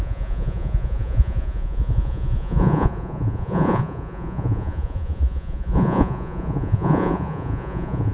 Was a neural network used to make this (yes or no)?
yes